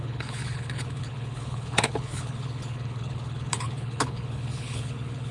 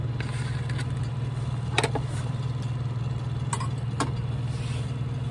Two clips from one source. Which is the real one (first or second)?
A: second